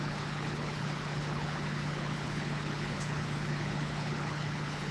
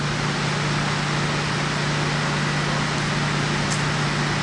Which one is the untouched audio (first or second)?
second